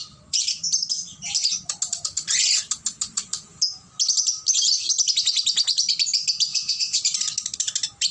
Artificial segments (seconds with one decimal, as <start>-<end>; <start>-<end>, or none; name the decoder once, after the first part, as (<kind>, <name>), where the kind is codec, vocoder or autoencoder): 6.5-7.0 (vocoder, Vocos)